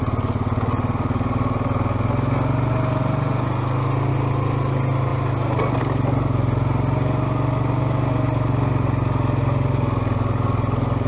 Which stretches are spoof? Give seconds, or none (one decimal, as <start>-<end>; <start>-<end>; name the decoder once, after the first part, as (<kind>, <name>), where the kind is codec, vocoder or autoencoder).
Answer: none